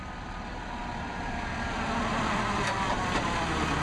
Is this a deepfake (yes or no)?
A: yes